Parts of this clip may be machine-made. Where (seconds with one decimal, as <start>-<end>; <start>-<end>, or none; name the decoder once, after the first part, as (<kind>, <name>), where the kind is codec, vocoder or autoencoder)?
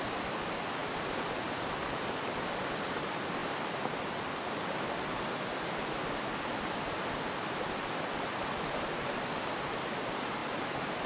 0.8-2.9 (vocoder, BigVGAN v2); 3.4-3.9; 10.4-11.1